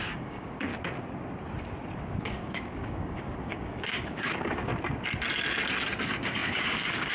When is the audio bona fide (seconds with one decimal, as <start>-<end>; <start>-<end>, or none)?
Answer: 0.7-2.2; 4.7-6.0